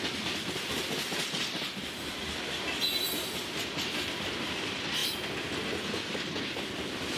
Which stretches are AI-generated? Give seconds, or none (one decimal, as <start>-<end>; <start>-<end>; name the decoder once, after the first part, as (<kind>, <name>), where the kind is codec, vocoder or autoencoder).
none